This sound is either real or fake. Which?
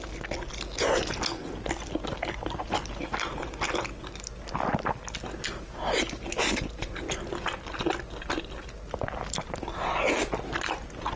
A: real